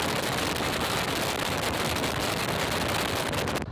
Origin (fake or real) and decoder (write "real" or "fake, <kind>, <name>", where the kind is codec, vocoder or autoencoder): real